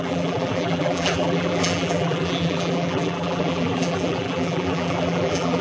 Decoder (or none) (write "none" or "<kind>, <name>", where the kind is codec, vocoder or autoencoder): vocoder, BigVGAN v2